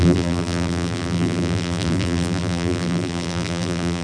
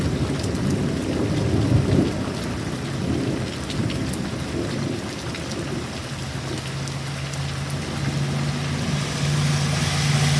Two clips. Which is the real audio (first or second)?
second